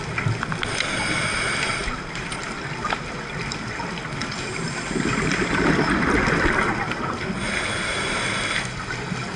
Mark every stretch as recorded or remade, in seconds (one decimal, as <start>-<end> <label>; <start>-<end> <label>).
0.0-9.4 recorded